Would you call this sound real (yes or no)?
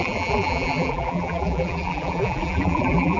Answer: no